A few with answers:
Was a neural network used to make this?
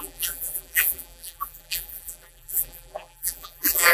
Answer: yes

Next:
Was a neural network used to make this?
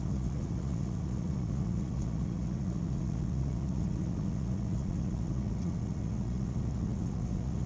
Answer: yes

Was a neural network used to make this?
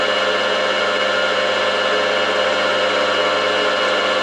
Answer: no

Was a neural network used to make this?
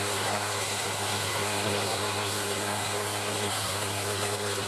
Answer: yes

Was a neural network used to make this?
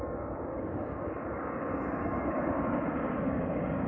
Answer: yes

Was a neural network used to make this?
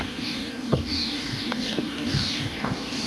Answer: yes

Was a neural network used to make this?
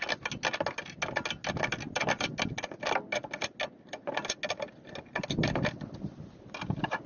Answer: no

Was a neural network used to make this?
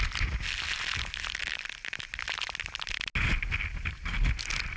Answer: no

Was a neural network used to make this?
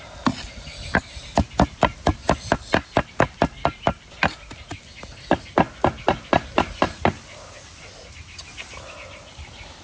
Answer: no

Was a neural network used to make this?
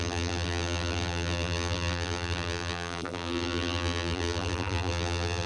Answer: yes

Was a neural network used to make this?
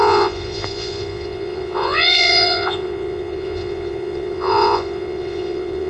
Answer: yes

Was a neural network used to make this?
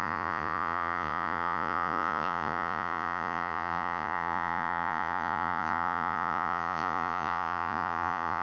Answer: yes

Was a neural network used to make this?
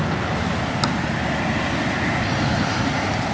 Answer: no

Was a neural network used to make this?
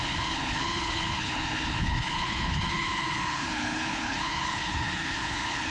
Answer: yes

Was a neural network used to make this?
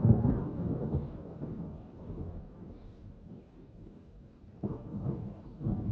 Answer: yes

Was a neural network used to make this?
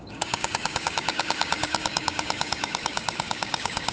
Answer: yes